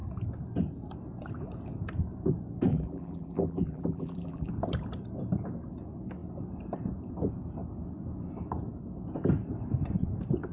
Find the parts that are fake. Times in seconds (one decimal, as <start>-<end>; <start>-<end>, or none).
2.7-4.5